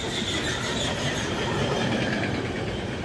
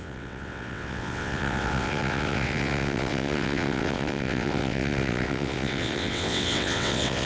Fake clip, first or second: second